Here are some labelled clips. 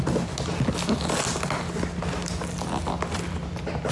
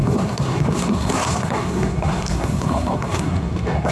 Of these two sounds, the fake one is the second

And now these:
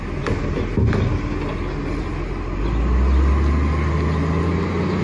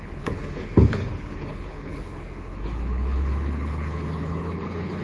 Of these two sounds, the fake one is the second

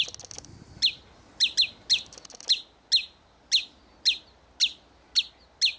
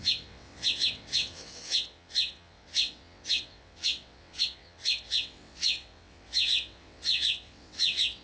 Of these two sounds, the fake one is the second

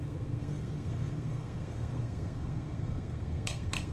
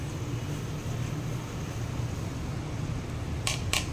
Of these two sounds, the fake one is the first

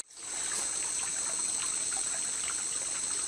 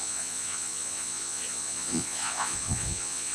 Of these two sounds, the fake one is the second